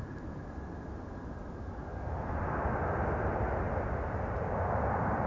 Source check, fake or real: real